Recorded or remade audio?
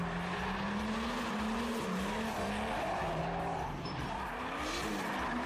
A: recorded